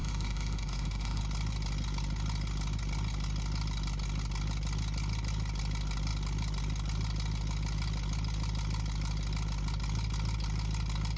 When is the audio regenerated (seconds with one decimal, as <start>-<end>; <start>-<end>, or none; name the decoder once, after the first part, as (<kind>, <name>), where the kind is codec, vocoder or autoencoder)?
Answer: 0.0-1.2 (autoencoder, DAC-VAE)